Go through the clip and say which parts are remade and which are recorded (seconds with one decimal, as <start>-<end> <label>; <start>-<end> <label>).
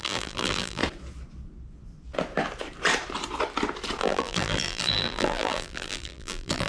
0.0-0.8 remade; 0.8-4.0 recorded; 4.0-6.7 remade